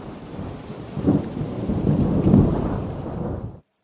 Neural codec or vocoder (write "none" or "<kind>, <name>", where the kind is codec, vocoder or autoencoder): vocoder, BigVGAN v2